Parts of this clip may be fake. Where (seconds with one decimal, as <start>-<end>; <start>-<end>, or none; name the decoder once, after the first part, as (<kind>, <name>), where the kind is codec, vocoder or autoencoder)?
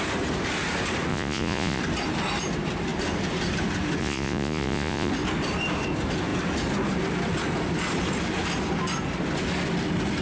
1.1-1.8 (vocoder, Vocos); 4.0-5.1